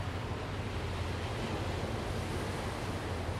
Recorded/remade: recorded